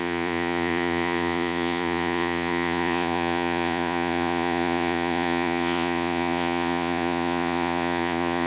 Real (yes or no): no